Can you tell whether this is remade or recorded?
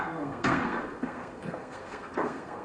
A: remade